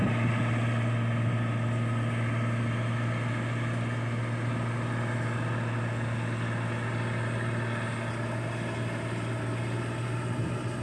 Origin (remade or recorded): recorded